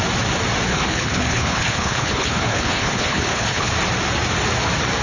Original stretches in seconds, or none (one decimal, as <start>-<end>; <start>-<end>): 0.0-0.7; 3.7-5.0